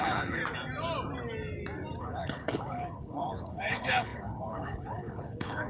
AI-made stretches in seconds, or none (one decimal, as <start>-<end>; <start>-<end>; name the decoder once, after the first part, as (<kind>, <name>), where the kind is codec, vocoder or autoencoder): 0.0-0.4 (codec, HILCodec); 2.0-5.7

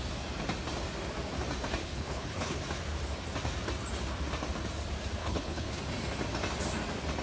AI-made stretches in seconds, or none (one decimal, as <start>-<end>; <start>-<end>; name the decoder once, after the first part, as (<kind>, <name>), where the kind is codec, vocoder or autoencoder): 1.8-2.6 (codec, HILCodec); 5.2-5.8

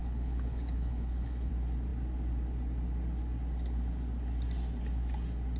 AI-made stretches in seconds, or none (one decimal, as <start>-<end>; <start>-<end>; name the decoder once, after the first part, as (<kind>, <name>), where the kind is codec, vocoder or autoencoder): 0.0-1.5 (codec, HILCodec)

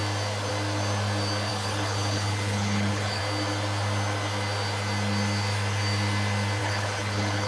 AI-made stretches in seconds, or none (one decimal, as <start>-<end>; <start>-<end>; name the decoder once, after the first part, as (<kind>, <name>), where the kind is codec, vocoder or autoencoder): 1.5-3.2 (codec, HILCodec); 6.6-7.5

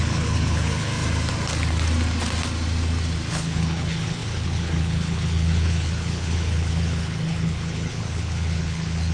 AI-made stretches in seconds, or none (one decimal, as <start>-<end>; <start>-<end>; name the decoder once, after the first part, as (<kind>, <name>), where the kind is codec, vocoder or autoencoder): 0.0-0.9 (codec, HILCodec); 3.3-9.1

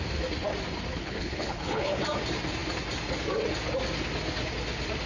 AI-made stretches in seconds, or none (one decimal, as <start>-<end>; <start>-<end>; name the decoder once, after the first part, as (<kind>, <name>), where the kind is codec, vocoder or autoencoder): 0.9-2.0 (codec, HILCodec)